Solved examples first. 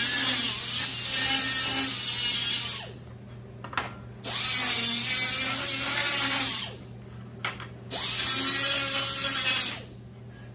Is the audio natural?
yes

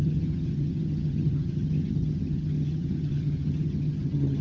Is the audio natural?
no